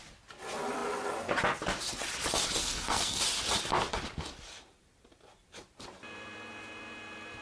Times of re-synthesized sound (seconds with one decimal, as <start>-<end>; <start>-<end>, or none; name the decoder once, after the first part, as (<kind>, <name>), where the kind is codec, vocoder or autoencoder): 2.6-3.2 (codec, SNAC)